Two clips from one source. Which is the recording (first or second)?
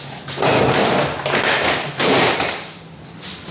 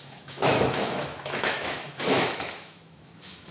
first